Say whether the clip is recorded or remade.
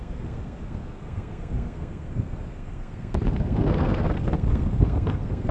remade